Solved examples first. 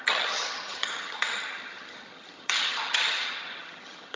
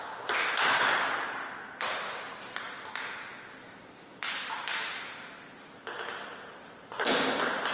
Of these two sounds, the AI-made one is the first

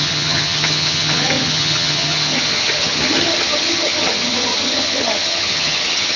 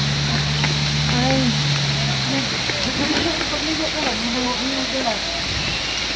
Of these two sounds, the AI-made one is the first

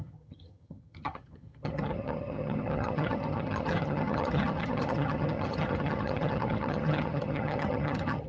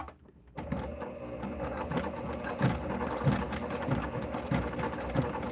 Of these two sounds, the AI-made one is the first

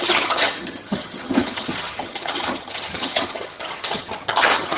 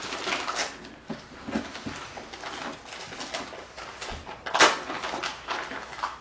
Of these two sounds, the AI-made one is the first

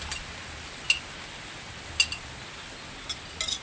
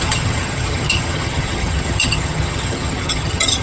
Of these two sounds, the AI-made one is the second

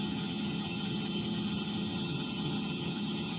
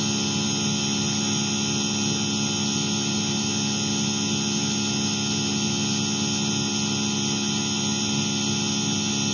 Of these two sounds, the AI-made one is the first